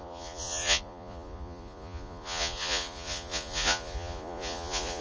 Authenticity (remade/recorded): remade